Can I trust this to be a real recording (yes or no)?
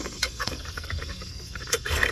no